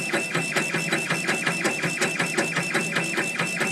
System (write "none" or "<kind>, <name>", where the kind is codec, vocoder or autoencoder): none